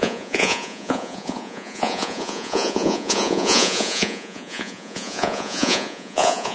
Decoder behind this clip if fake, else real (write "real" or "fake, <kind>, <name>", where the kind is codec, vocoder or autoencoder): fake, vocoder, Vocos